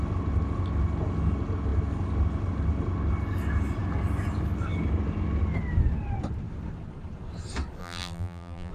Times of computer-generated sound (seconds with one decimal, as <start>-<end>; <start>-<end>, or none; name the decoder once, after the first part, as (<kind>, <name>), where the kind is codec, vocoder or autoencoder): 7.8-8.7 (vocoder, BigVGAN v2)